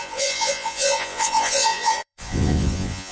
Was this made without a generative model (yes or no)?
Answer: no